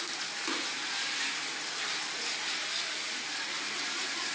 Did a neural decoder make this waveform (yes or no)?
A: no